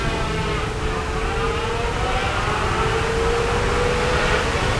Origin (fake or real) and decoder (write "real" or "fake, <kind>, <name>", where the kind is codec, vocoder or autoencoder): real